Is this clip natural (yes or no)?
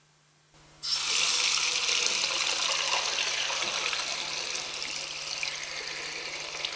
yes